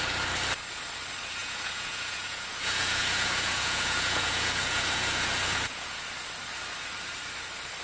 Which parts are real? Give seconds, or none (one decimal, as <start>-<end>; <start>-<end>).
0.0-1.4; 6.0-7.8